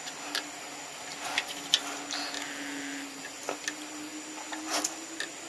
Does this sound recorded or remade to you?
recorded